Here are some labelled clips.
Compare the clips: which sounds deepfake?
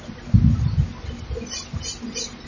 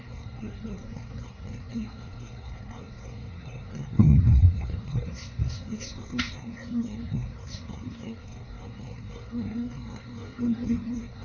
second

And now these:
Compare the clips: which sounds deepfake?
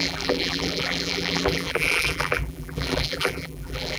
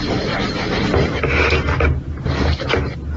first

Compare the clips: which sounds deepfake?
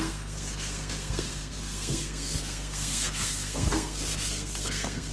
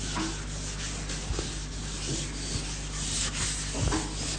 first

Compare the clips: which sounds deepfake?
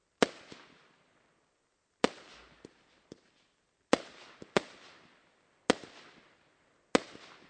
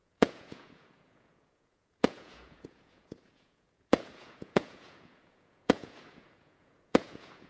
second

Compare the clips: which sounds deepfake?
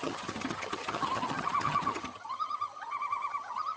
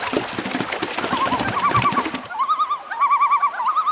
first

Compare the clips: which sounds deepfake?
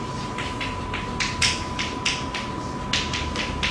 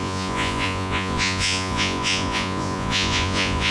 second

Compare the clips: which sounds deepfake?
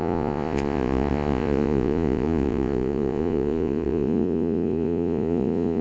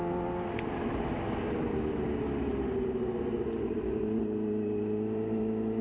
first